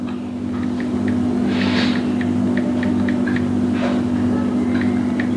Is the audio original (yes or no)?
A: yes